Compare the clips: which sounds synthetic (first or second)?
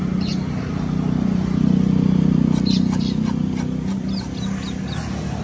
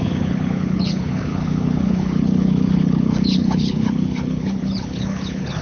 second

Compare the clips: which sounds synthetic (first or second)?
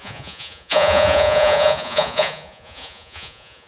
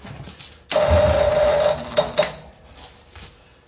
first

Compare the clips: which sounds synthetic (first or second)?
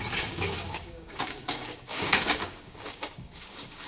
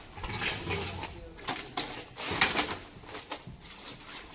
first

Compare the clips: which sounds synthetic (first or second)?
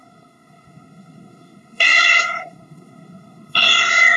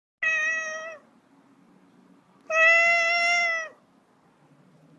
first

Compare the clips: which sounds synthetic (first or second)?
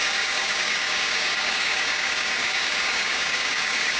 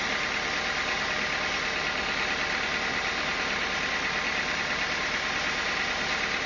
first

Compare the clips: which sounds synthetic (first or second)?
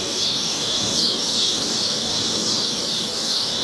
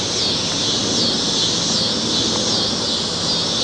first